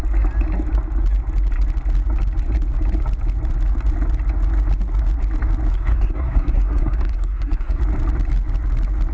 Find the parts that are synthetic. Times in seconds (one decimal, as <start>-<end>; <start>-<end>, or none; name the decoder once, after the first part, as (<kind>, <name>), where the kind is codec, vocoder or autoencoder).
5.7-7.8 (codec, SNAC)